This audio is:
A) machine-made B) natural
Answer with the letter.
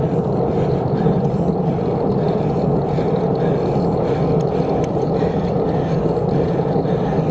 B